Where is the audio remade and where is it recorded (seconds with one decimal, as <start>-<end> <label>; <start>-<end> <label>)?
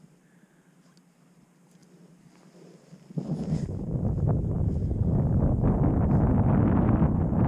0.0-7.5 recorded